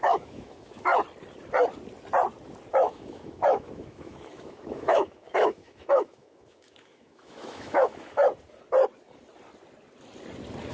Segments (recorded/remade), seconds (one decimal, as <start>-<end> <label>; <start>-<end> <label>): 0.0-0.9 remade; 0.9-2.7 recorded; 2.7-8.2 remade; 8.2-10.7 recorded